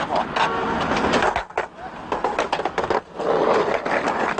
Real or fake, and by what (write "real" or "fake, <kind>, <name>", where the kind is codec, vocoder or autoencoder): real